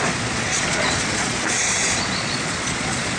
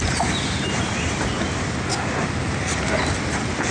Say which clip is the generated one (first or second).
first